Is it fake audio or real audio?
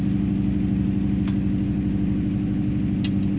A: real